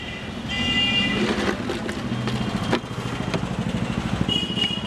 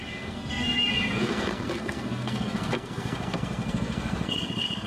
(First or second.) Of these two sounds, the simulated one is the second